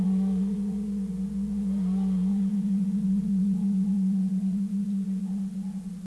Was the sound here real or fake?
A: fake